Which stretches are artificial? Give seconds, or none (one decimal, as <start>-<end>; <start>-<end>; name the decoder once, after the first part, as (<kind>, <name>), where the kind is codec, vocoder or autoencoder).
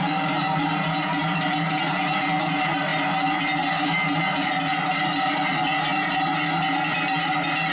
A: none